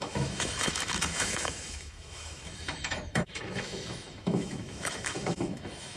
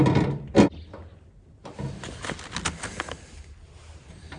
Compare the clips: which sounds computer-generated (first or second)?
first